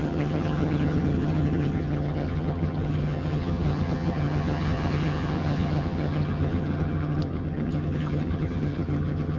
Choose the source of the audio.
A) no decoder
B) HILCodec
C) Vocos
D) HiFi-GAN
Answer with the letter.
D